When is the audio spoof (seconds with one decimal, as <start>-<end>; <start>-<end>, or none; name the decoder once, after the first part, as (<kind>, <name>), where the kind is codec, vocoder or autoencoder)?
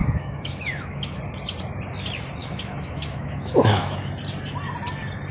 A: 0.0-1.2 (autoencoder, DAC-VAE); 2.4-4.1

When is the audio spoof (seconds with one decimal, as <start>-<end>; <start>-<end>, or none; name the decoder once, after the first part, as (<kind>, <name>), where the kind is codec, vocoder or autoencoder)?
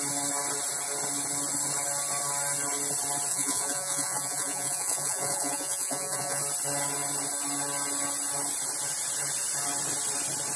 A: 3.3-6.4 (vocoder, Vocos)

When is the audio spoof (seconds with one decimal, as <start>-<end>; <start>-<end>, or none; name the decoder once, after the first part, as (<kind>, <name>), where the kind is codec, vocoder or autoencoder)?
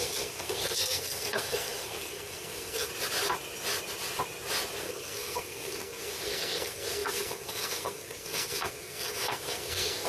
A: 0.0-2.9 (codec, SNAC); 4.8-10.1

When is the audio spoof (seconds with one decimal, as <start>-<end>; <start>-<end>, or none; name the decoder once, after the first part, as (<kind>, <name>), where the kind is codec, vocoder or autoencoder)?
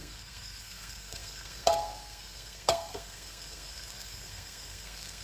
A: 0.0-5.2 (codec, SNAC)